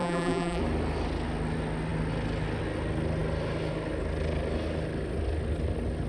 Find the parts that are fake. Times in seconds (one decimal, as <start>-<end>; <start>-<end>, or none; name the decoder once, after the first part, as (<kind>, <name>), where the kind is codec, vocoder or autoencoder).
0.0-0.6 (vocoder, BigVGAN v2)